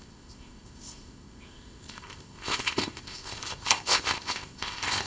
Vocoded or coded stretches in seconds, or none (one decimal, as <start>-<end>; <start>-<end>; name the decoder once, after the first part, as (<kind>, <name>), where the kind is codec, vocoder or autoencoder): 0.0-5.1 (codec, ZipCodec)